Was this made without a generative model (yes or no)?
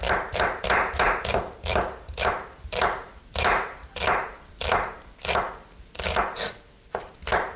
no